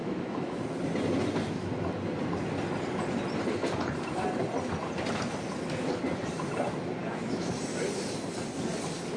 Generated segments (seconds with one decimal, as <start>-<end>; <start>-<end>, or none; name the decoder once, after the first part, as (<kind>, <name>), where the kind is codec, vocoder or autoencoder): 0.0-0.6 (autoencoder, DAC-VAE); 7.0-7.5